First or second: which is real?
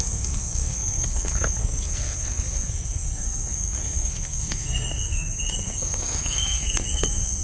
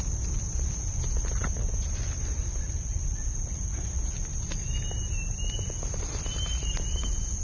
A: second